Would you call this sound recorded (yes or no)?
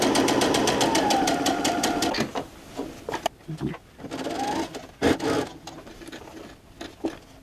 yes